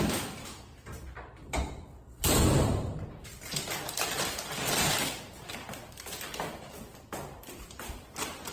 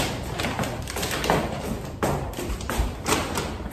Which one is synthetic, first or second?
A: first